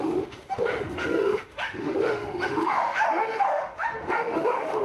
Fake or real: fake